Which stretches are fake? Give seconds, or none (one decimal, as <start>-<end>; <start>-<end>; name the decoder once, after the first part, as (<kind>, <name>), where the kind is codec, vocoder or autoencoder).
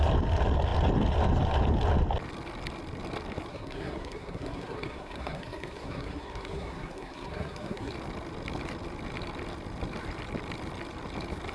3.5-7.9 (codec, SNAC)